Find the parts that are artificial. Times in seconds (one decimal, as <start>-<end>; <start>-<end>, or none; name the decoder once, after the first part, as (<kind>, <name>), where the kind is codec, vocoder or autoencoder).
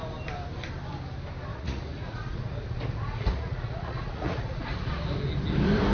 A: 1.5-5.0 (vocoder, Vocos)